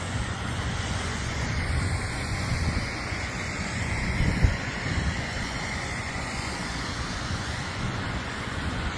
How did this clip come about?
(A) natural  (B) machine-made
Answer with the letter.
B